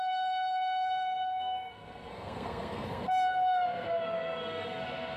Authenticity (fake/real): fake